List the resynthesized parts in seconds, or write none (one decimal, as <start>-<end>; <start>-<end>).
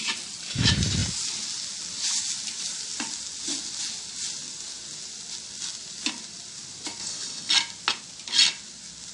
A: 7.0-7.5